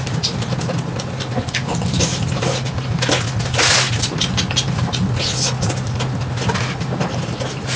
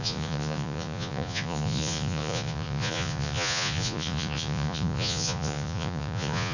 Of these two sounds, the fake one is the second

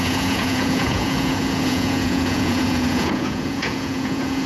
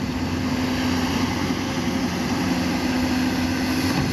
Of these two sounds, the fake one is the first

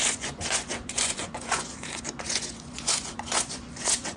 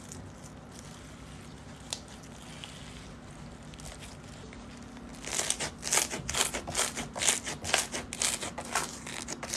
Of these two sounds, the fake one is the first